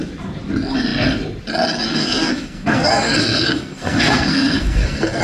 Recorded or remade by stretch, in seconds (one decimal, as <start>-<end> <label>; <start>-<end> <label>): 0.0-2.0 recorded; 2.0-5.2 remade